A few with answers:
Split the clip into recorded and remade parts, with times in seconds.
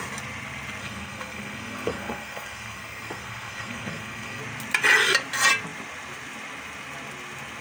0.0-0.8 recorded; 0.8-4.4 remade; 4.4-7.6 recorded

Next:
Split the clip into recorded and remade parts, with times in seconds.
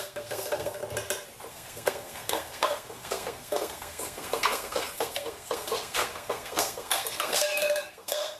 0.0-0.8 remade; 0.8-1.5 recorded; 1.5-8.4 remade